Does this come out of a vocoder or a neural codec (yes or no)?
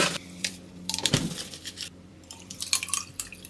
yes